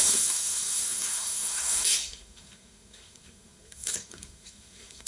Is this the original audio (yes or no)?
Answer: no